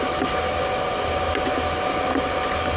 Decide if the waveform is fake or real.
real